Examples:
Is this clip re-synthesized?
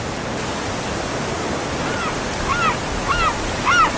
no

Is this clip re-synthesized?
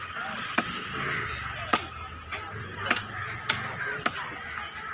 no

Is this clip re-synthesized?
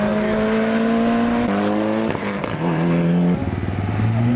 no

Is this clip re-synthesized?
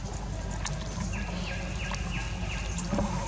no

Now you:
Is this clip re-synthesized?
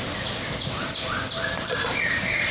yes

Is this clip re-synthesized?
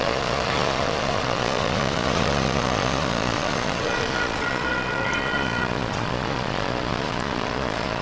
yes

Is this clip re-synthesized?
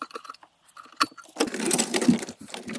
no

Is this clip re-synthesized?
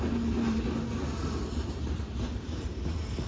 no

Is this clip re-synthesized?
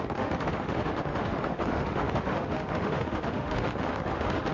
yes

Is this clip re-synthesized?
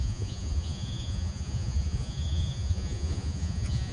yes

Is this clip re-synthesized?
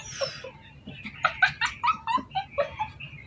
no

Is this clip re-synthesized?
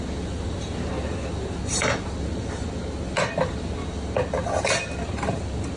no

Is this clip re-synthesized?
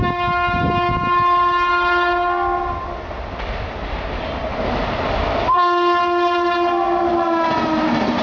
no